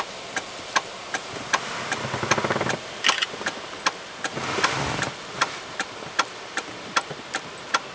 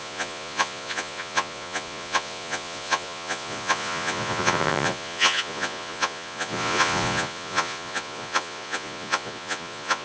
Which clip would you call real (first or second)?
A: first